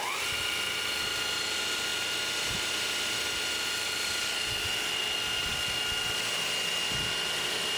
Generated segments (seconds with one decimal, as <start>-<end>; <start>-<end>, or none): none